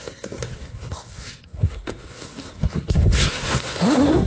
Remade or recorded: remade